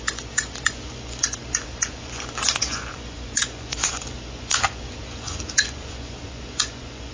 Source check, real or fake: fake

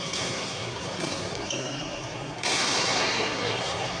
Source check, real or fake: fake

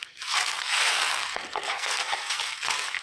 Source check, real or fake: fake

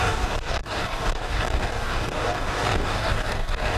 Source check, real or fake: fake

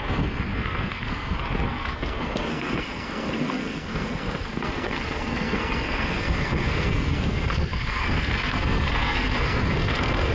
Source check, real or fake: fake